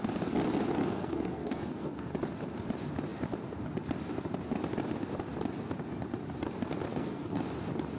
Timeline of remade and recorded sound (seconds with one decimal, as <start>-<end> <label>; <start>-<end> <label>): 0.0-0.8 recorded; 0.8-2.1 remade; 2.1-6.9 recorded; 6.9-7.4 remade; 7.4-8.0 recorded